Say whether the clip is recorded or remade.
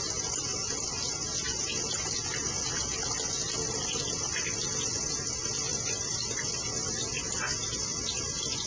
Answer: recorded